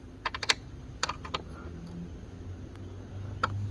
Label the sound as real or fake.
real